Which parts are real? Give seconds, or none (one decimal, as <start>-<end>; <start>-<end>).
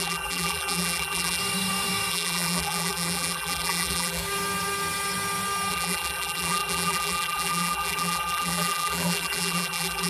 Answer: 1.4-2.1; 4.2-5.7